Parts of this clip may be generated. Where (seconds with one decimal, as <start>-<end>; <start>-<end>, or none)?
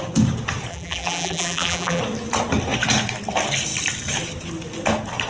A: 0.7-2.0